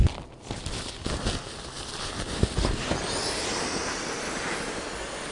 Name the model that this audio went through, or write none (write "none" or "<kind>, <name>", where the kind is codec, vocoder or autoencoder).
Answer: none